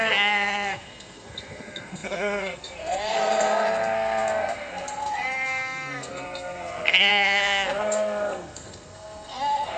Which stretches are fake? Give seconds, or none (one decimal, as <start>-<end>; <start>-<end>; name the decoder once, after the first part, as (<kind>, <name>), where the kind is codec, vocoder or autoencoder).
0.0-9.8 (codec, SNAC)